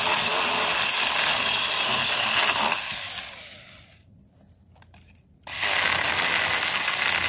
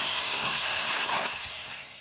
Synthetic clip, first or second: second